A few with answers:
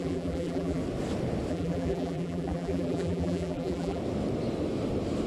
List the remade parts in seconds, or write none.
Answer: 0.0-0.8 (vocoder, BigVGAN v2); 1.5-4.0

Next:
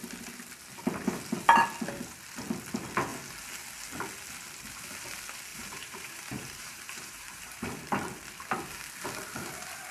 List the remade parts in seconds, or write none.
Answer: 5.5-7.9 (vocoder, BigVGAN v2)

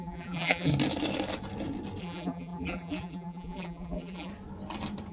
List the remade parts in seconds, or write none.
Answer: 0.0-0.7 (vocoder, BigVGAN v2); 2.0-4.3

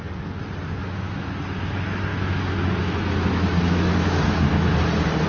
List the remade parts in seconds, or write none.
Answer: 0.8-1.3 (autoencoder, DAC-VAE); 2.1-4.7

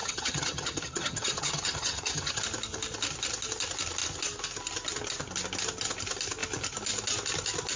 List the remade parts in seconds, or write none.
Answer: 0.0-2.4 (vocoder, HiFi-GAN)